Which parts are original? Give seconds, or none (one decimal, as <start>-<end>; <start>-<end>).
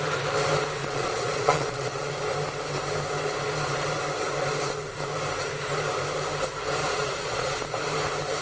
0.0-0.8; 2.1-6.8; 7.6-8.4